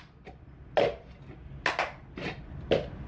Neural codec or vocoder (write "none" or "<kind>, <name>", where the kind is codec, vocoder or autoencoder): none